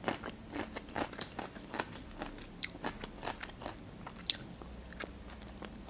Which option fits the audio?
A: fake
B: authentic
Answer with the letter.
B